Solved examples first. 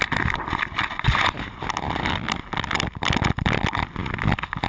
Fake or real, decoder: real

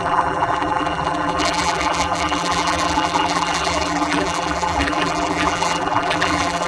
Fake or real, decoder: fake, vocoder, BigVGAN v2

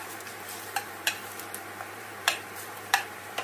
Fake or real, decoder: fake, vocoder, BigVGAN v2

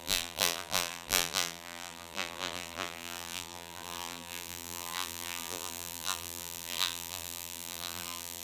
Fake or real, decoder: fake, vocoder, BigVGAN v2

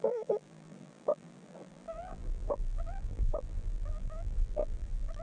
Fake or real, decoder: fake, vocoder, BigVGAN v2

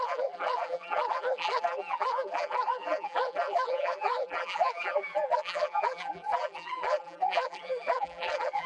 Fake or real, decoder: fake, vocoder, BigVGAN v2